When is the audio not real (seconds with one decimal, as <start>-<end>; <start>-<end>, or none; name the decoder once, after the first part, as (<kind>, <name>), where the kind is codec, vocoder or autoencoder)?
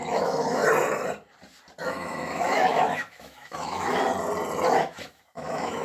0.0-0.6 (autoencoder, DAC-VAE); 1.8-4.1; 4.7-5.8